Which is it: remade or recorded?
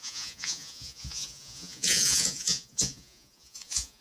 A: remade